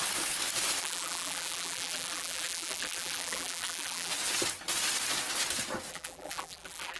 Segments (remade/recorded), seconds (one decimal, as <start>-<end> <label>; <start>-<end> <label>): 0.0-0.8 recorded; 0.8-4.1 remade; 4.1-5.9 recorded; 5.9-7.0 remade